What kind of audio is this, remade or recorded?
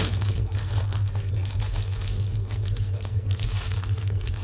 remade